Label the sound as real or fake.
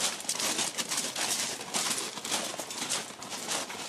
real